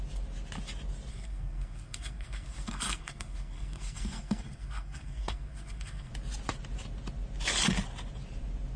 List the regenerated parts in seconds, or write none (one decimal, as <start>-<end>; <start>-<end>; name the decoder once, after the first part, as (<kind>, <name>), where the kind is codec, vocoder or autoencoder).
1.1-6.1 (codec, SNAC)